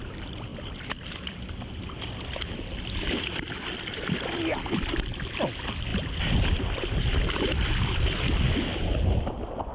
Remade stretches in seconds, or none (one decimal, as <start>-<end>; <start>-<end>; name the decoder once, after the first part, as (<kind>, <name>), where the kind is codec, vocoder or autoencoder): 0.5-4.6 (vocoder, BigVGAN v2); 5.9-8.4